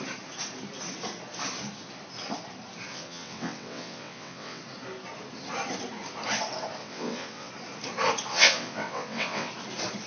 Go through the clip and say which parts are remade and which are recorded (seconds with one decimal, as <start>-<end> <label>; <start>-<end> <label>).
0.0-2.9 recorded; 2.9-4.6 remade; 4.6-6.8 recorded; 6.8-7.5 remade; 7.5-8.3 recorded; 8.3-9.5 remade; 9.5-10.1 recorded